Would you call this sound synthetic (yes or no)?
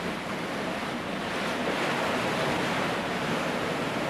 no